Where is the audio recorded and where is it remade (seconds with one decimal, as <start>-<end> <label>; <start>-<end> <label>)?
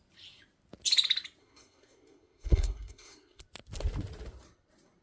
0.0-1.4 recorded; 1.4-3.4 remade; 3.4-5.0 recorded